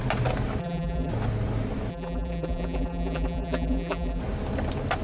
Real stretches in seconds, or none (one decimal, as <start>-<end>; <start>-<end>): 0.0-0.6; 1.1-1.9; 4.2-5.0